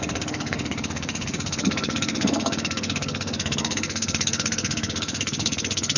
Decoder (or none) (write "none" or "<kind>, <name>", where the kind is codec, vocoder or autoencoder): codec, SNAC